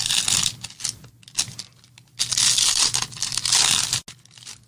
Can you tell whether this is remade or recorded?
recorded